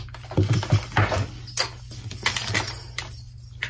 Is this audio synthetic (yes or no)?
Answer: no